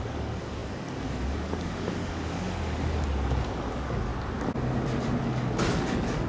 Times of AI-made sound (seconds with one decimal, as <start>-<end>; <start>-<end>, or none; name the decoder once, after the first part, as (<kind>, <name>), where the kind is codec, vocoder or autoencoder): 0.0-4.1 (codec, DAC); 5.2-6.3